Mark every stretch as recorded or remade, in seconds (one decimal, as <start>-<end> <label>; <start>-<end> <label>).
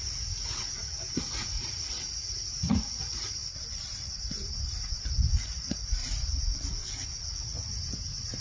0.0-3.4 remade; 3.4-5.4 recorded; 5.4-6.0 remade; 6.0-7.9 recorded; 7.9-8.4 remade